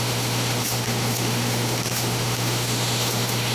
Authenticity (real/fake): fake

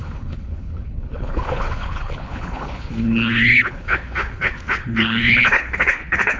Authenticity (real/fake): fake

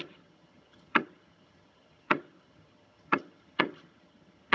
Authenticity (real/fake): fake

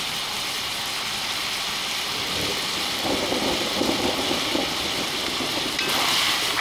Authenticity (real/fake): real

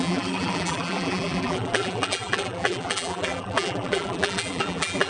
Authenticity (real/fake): fake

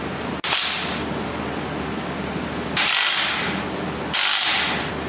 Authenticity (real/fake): real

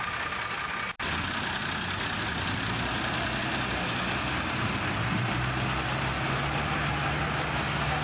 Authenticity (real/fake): real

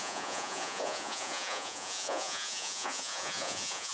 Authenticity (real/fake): fake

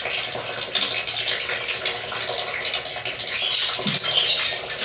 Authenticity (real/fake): real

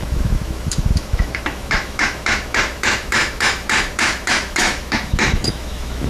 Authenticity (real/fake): fake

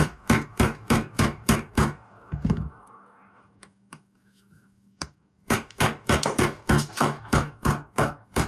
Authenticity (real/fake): fake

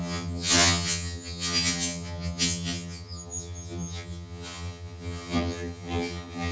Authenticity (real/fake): fake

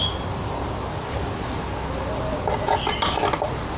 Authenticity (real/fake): real